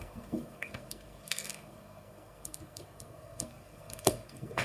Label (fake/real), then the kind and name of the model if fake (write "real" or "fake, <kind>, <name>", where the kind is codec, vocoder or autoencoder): fake, codec, SNAC